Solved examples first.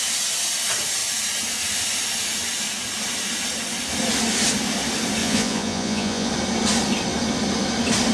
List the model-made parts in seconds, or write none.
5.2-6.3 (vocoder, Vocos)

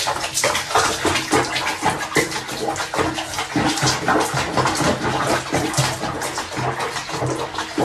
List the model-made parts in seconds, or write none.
none

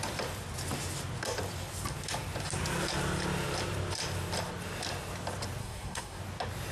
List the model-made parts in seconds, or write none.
5.6-6.2 (codec, SNAC)

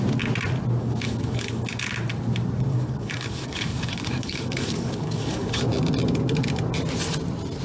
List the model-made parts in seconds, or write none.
0.8-1.6 (codec, DAC); 2.7-5.6